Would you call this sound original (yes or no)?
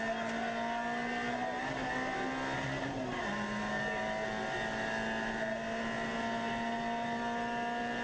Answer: yes